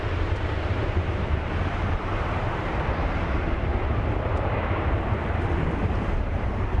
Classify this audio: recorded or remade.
remade